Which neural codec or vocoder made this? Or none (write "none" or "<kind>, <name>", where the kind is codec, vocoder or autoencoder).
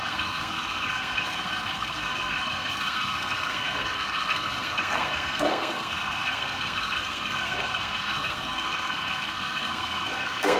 codec, SNAC